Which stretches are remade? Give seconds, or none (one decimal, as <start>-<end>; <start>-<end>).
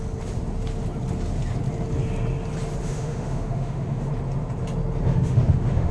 2.8-4.1; 5.1-5.9